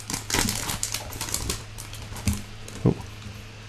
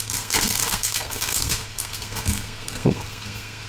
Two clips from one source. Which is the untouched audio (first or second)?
first